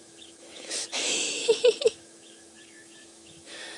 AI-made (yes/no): yes